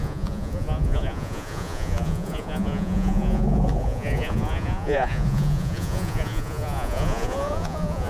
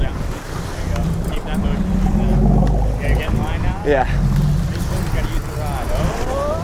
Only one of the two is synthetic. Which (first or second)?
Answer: first